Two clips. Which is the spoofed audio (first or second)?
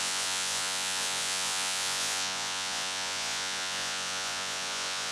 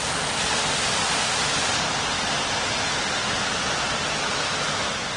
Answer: first